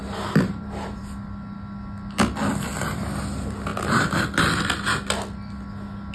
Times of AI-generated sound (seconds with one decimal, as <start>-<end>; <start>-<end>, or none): 0.0-1.0; 3.7-4.2